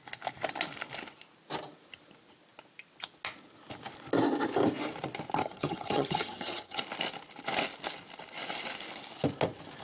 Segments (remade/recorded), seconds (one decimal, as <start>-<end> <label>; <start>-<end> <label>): 0.0-5.4 recorded; 5.4-6.8 remade; 6.8-9.8 recorded